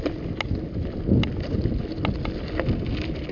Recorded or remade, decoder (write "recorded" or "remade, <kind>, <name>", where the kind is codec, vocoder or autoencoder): recorded